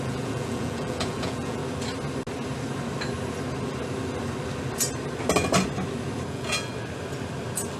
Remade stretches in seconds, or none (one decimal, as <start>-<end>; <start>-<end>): 0.0-1.6; 6.3-6.7